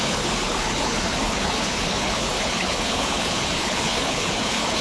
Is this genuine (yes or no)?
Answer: no